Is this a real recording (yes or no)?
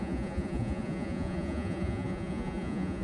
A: no